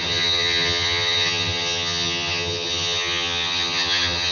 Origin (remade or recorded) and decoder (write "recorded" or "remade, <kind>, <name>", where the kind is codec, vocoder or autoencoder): remade, vocoder, HiFi-GAN